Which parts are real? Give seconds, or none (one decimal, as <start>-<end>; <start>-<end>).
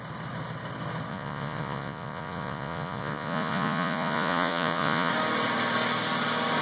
0.0-1.1; 5.1-6.6